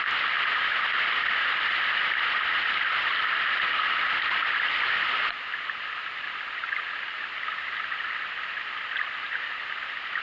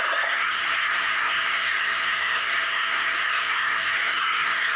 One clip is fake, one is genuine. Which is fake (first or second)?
second